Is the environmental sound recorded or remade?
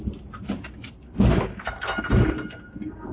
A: recorded